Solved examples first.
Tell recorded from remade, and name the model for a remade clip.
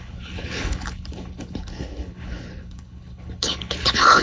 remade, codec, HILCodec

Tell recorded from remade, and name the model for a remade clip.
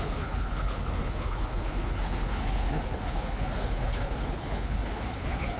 remade, codec, HILCodec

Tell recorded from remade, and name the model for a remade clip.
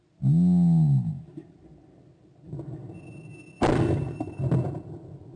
recorded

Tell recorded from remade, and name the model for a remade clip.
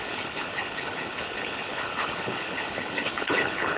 remade, codec, HILCodec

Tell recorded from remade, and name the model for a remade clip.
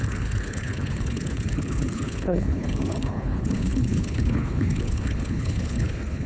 remade, codec, HILCodec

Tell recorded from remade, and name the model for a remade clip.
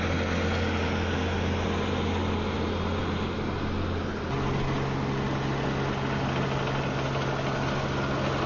recorded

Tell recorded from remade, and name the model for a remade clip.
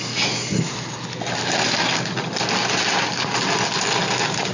recorded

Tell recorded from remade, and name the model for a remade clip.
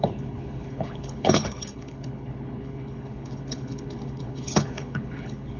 remade, codec, HILCodec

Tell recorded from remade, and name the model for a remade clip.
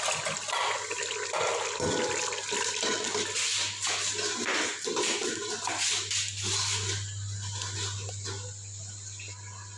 recorded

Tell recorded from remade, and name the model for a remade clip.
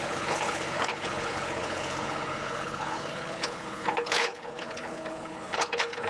remade, codec, HILCodec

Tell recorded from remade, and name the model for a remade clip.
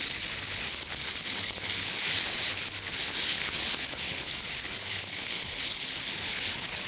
remade, codec, HILCodec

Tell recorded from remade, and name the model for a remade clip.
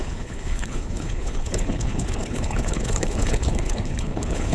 remade, codec, HILCodec